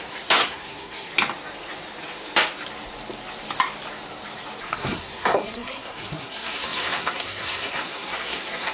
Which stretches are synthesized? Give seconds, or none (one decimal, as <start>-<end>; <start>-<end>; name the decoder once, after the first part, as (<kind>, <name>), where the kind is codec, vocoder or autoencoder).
0.0-1.1 (codec, SNAC); 4.6-8.7

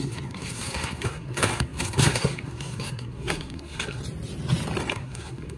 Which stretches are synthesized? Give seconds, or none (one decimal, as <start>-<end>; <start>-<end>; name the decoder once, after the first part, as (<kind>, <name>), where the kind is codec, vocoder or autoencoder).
0.0-4.0 (codec, SNAC); 4.9-5.6

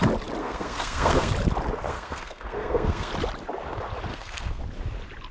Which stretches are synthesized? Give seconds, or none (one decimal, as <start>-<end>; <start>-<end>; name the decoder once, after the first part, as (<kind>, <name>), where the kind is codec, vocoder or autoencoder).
0.4-1.3 (codec, SNAC); 1.9-3.1; 4.1-4.6

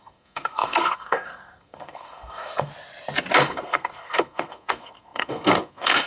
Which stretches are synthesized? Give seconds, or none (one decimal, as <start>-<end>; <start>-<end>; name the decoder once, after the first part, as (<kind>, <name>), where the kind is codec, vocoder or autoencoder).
0.0-2.7 (codec, SNAC); 3.4-6.1

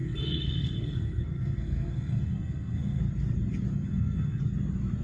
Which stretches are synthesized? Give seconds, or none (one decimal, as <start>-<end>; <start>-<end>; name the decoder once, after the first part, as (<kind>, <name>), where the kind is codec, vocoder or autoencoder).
0.0-3.0 (codec, SNAC); 3.7-4.4